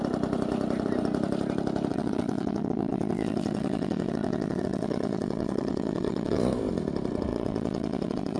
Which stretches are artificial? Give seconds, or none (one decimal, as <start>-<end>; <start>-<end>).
1.9-6.4; 7.3-8.4